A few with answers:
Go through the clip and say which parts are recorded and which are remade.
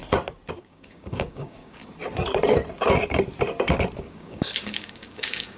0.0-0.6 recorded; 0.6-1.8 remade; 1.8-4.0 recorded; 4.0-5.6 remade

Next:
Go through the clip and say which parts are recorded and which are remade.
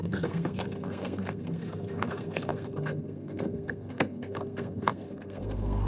0.0-5.9 remade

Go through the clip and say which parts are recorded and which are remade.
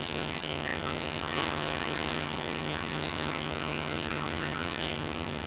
0.0-5.5 remade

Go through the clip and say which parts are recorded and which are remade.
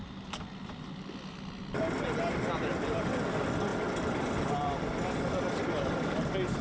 0.0-6.6 recorded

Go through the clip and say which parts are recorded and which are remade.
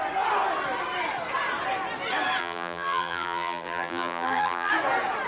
0.0-2.4 recorded; 2.4-4.7 remade; 4.7-5.3 recorded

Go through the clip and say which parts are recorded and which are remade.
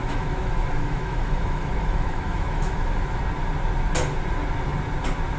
0.0-3.2 remade; 3.2-5.4 recorded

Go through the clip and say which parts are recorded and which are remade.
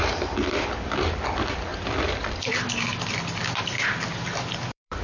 0.0-0.7 remade; 0.7-1.7 recorded; 1.7-5.0 remade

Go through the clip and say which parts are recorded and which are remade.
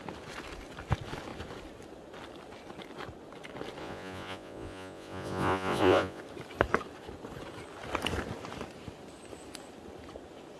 0.0-3.8 recorded; 3.8-6.2 remade; 6.2-10.6 recorded